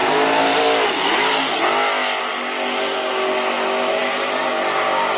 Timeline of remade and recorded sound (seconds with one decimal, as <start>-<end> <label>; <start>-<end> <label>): 0.0-5.2 recorded